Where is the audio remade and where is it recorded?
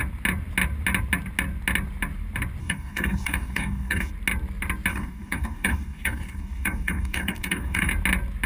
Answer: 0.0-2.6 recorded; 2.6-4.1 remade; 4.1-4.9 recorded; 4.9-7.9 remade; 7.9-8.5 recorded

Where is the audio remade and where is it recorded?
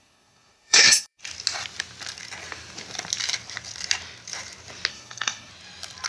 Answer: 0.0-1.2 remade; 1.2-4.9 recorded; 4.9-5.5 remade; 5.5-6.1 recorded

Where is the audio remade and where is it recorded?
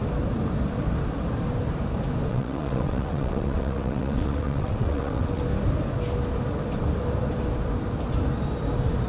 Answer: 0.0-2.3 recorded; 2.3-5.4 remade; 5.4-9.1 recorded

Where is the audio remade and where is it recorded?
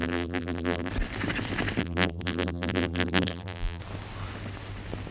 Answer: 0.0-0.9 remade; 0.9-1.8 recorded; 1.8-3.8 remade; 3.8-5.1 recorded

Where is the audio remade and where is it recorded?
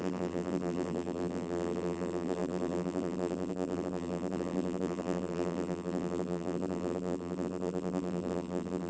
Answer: 0.0-8.9 remade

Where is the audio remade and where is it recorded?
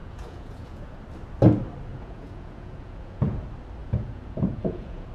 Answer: 0.0-1.0 remade; 1.0-1.9 recorded; 1.9-3.4 remade; 3.4-3.8 recorded; 3.8-5.1 remade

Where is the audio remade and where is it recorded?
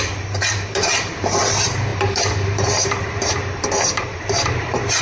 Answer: 0.0-5.0 remade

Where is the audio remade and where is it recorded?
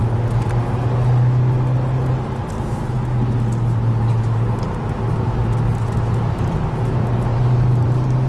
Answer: 0.0-7.3 recorded; 7.3-8.3 remade